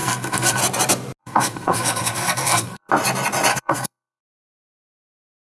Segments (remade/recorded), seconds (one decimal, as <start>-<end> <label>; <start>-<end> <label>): 0.0-0.6 remade; 0.6-1.2 recorded; 1.2-2.9 remade; 2.9-3.5 recorded; 3.5-4.2 remade; 4.2-5.5 recorded